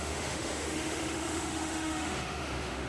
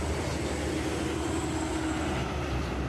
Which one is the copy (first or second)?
first